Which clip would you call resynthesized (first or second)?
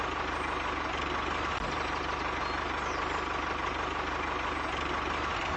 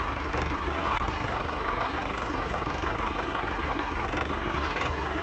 second